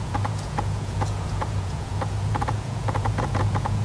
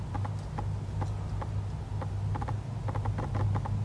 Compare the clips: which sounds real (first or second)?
second